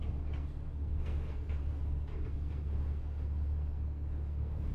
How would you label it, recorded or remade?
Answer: remade